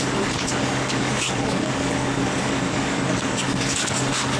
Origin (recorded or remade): remade